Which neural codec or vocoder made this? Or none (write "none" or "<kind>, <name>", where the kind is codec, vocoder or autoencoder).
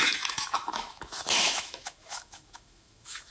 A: autoencoder, DAC-VAE